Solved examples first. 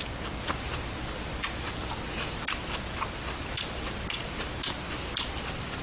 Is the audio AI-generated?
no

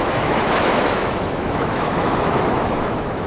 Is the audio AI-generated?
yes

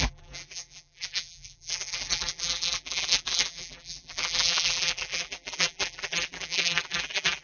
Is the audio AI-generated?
yes